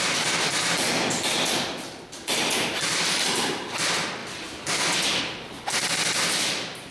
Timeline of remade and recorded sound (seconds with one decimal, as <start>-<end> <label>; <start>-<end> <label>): 0.0-6.9 recorded